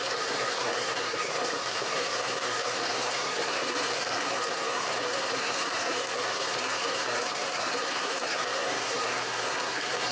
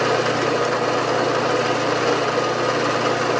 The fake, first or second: first